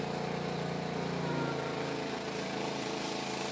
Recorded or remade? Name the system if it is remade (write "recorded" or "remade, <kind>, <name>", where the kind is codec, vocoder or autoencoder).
remade, vocoder, BigVGAN v2